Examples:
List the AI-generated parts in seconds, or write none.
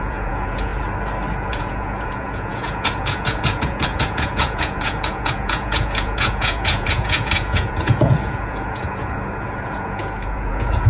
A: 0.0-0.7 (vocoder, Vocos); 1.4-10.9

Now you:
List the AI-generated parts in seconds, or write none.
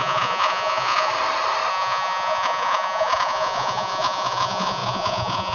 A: 0.0-1.1 (vocoder, Vocos); 1.7-5.5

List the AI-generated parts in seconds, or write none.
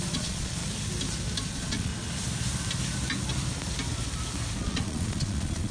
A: 0.0-0.6 (vocoder, Vocos); 1.5-1.9; 4.6-5.7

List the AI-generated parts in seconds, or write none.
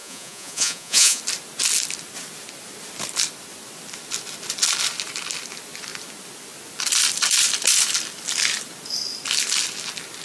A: 0.0-1.2 (vocoder, Vocos)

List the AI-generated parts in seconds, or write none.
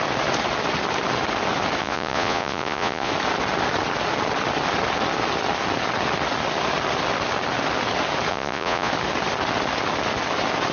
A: 1.8-3.1 (vocoder, Vocos); 8.3-8.9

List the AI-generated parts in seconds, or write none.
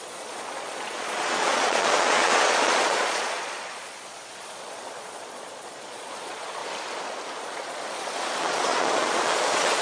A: 0.0-6.6 (vocoder, Vocos); 7.4-9.8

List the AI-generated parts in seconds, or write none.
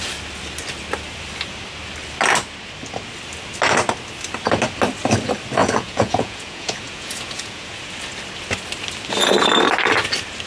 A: 5.6-7.9 (vocoder, Vocos)